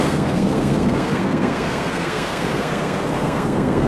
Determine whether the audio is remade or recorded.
remade